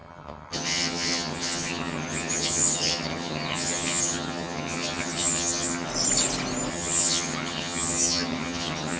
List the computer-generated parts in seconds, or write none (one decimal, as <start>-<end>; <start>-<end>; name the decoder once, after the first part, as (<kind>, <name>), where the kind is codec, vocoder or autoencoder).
0.0-5.9 (vocoder, HiFi-GAN); 6.7-9.0